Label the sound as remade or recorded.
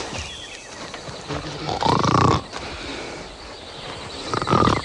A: recorded